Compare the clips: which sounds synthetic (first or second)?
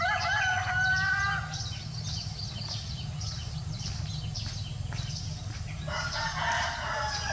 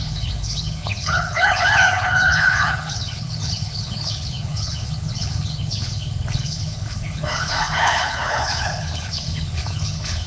second